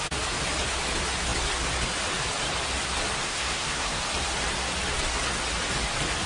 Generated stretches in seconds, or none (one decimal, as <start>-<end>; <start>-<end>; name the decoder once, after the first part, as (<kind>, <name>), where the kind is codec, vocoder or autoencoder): 3.2-4.0 (codec, SNAC)

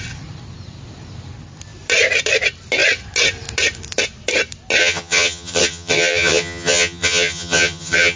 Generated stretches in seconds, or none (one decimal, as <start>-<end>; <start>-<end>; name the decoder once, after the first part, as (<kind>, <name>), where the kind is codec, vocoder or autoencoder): 4.8-8.2 (vocoder, HiFi-GAN)

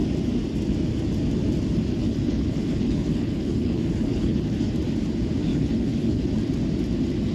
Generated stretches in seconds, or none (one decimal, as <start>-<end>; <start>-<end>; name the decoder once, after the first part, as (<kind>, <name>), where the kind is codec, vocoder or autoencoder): 1.9-4.7 (codec, HILCodec); 5.5-6.3

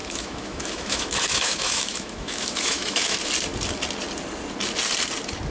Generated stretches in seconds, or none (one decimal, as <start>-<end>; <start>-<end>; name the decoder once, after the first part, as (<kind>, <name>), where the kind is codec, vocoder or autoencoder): 0.0-3.3 (autoencoder, DAC-VAE)